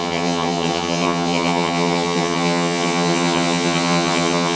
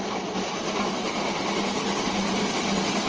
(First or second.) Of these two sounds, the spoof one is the first